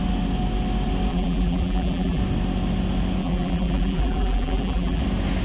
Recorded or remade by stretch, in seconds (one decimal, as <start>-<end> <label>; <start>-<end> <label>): 0.0-1.1 recorded; 1.1-2.2 remade; 2.2-3.2 recorded; 3.2-5.0 remade; 5.0-5.4 recorded

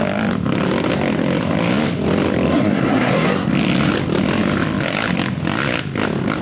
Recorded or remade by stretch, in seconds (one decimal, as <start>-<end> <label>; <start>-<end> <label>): 0.0-2.5 recorded; 2.5-3.5 remade; 3.5-6.4 recorded

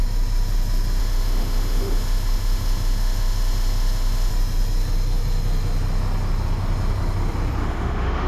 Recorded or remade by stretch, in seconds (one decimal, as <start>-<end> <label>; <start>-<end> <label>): 0.0-1.0 recorded; 1.0-4.3 remade; 4.3-7.6 recorded; 7.6-8.3 remade